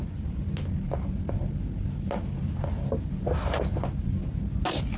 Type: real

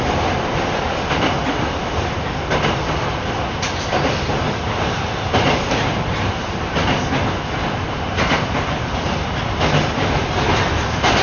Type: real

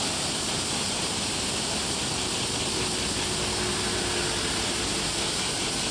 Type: real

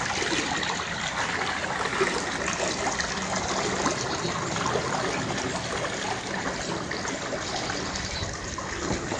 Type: real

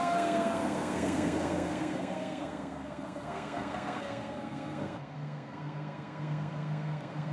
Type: fake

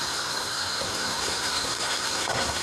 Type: fake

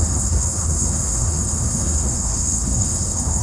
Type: fake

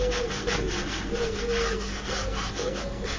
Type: fake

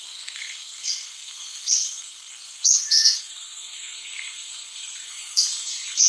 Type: fake